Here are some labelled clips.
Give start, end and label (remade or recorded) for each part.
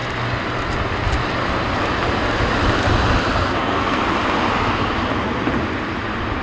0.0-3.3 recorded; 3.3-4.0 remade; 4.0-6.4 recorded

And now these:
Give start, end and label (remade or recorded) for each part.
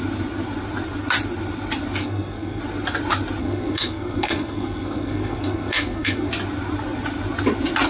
0.0-2.0 recorded; 2.0-2.6 remade; 2.6-3.4 recorded; 3.4-6.3 remade; 6.3-7.9 recorded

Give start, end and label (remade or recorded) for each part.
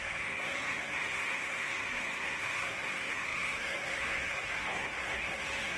0.0-5.8 remade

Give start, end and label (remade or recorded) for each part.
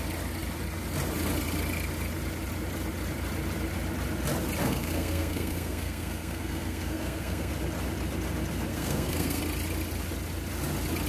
0.0-4.6 recorded; 4.6-7.5 remade; 7.5-8.7 recorded; 8.7-9.4 remade; 9.4-11.1 recorded